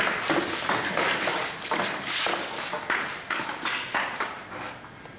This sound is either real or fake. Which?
real